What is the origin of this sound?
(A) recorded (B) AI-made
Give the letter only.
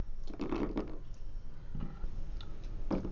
A